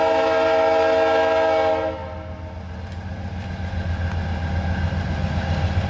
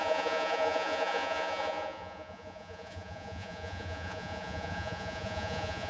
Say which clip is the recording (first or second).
first